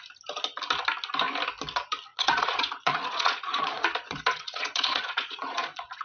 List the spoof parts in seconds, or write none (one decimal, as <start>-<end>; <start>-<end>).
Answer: 2.1-6.0

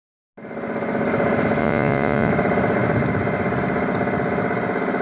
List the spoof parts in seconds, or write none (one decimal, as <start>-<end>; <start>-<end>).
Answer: 1.6-2.3

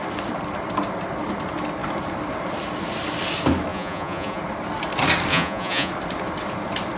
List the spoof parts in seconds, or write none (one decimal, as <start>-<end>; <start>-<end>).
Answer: 3.7-4.4; 5.3-5.9